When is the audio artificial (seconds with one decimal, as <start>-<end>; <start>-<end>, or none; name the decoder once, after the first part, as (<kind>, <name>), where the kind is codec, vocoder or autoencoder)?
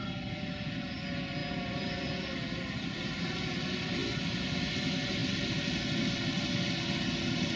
none